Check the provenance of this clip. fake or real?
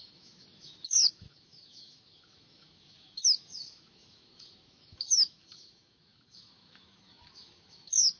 fake